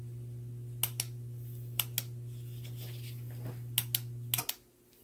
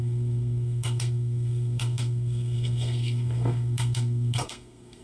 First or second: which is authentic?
first